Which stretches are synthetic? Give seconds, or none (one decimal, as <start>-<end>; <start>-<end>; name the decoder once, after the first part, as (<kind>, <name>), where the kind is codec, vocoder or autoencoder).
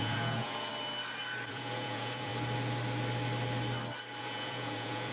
0.0-0.7 (vocoder, Vocos); 1.5-2.3; 4.2-5.1